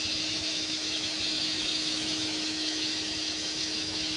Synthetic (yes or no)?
yes